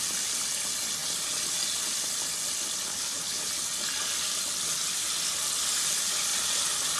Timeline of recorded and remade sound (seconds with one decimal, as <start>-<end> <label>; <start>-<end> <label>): 0.0-2.9 recorded; 2.9-3.5 remade; 3.5-7.0 recorded